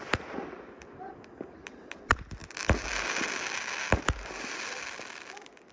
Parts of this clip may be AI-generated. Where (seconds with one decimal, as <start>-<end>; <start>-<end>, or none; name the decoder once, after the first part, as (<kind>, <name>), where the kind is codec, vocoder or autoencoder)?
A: none